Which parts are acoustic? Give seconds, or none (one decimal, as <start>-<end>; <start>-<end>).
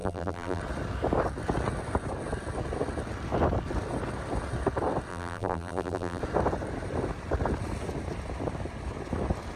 0.6-5.1; 6.2-9.6